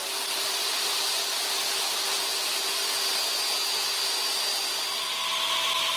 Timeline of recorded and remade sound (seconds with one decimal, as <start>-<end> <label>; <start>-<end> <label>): 0.0-1.0 remade; 1.0-6.0 recorded